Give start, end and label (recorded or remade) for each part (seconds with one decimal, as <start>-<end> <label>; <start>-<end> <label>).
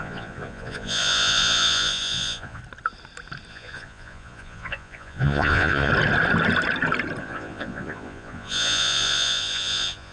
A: 0.0-2.6 remade; 2.6-3.5 recorded; 3.5-5.9 remade; 5.9-7.2 recorded; 7.2-10.1 remade